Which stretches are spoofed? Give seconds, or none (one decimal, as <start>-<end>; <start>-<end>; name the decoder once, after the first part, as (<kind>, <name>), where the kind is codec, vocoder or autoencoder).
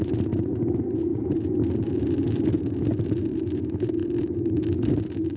none